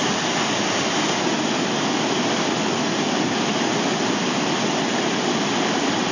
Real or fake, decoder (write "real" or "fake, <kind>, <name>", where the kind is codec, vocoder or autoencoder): real